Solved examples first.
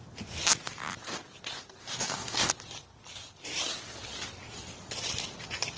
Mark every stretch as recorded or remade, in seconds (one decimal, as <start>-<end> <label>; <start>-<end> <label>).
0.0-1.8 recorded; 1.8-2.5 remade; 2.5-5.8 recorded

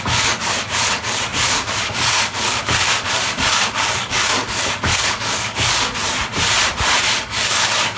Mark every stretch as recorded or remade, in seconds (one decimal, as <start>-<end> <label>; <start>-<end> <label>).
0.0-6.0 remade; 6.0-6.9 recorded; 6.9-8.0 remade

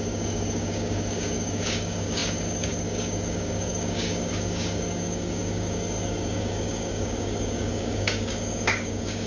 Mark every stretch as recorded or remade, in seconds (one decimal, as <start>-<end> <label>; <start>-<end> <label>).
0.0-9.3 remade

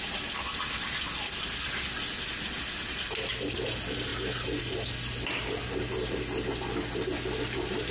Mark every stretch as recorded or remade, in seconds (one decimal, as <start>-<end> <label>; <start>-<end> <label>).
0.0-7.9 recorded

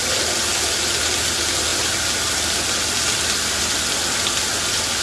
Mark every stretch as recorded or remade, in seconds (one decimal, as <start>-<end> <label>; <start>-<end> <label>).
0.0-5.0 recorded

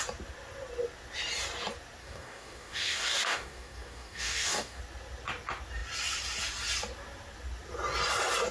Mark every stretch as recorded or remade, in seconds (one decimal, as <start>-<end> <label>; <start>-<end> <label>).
0.0-2.0 recorded; 2.0-4.8 remade; 4.8-8.5 recorded

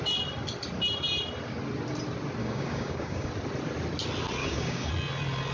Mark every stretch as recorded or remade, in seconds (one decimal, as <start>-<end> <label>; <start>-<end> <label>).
0.0-2.4 recorded; 2.4-3.3 remade; 3.3-4.4 recorded; 4.4-4.9 remade; 4.9-5.5 recorded

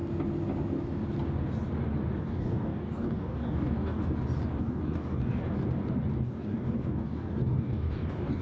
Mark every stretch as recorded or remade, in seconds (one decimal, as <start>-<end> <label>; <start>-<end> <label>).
0.0-2.2 recorded; 2.2-4.0 remade; 4.0-4.6 recorded; 4.6-5.4 remade; 5.4-6.2 recorded; 6.2-8.4 remade